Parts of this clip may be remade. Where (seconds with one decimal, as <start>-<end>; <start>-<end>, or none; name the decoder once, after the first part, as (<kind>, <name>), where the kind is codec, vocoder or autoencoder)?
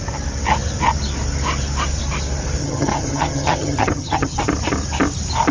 2.6-4.4 (vocoder, HiFi-GAN)